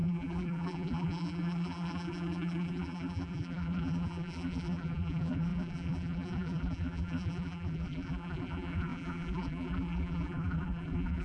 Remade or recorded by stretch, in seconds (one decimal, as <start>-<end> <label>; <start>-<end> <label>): 0.0-11.2 remade